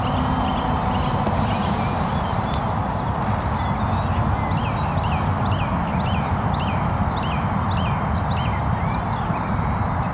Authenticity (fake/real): real